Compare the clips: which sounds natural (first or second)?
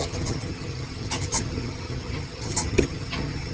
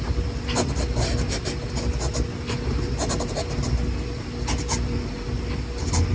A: second